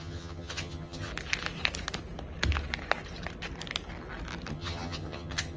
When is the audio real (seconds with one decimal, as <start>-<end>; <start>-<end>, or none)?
1.1-4.5